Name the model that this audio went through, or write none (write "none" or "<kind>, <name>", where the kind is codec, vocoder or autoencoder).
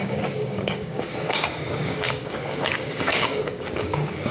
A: codec, DAC